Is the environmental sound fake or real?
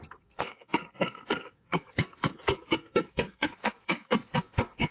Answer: fake